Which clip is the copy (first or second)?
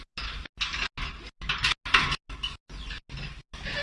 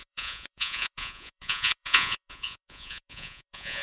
second